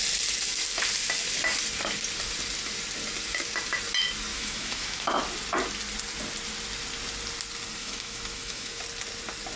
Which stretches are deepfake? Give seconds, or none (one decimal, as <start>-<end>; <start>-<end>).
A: 4.3-5.1; 7.8-8.8